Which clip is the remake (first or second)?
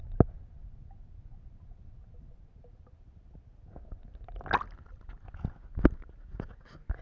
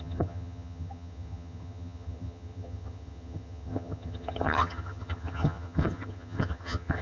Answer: second